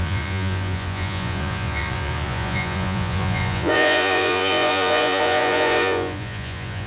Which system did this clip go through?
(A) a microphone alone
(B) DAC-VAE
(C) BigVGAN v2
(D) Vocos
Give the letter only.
D